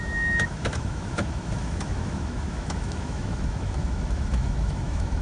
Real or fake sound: fake